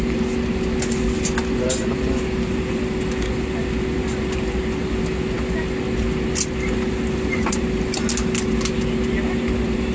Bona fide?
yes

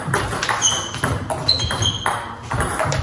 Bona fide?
yes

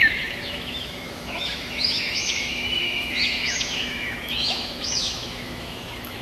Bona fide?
no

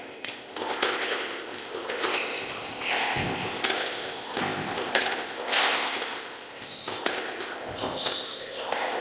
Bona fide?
no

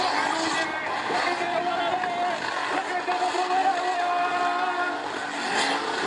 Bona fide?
yes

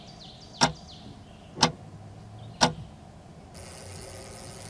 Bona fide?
yes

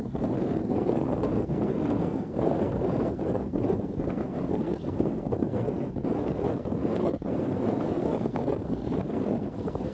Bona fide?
no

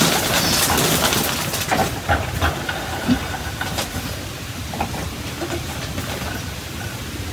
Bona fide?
yes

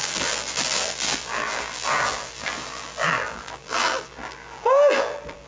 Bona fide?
no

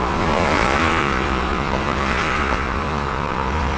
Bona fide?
no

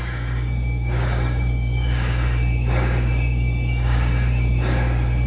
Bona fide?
no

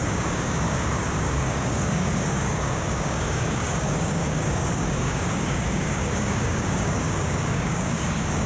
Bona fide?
no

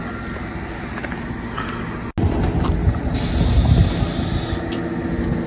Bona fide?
yes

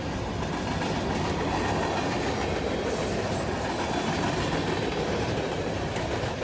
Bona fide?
yes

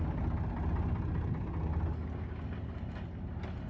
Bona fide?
yes